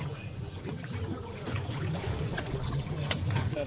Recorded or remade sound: remade